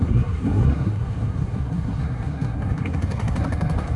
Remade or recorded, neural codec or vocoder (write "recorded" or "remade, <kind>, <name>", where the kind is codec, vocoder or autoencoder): remade, codec, SNAC